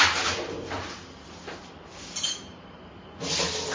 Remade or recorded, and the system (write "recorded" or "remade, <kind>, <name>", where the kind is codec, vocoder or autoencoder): recorded